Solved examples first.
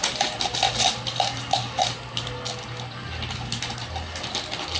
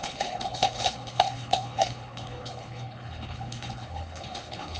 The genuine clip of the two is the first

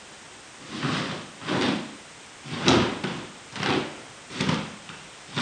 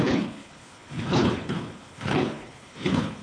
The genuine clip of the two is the first